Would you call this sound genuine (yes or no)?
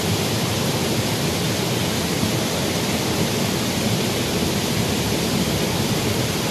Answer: no